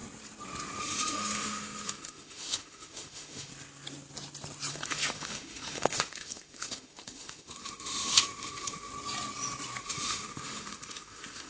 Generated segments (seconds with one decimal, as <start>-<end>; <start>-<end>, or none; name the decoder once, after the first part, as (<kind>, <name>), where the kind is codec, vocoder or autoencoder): 0.8-3.5 (autoencoder, DAC-VAE); 4.7-8.9; 9.8-11.5